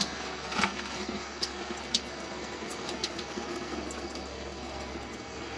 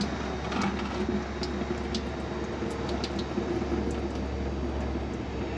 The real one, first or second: second